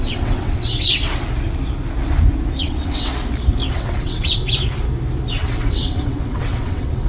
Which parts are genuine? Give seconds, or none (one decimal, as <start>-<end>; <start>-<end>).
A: 1.1-2.6; 3.1-3.7; 4.4-5.3